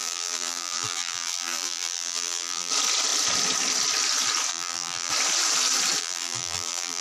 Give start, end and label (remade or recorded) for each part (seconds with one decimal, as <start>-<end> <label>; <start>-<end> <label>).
0.0-2.7 remade; 2.7-4.5 recorded; 4.5-5.1 remade; 5.1-6.0 recorded; 6.0-7.0 remade